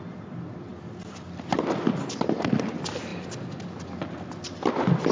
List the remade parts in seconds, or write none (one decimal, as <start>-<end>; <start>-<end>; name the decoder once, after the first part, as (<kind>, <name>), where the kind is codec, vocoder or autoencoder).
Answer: none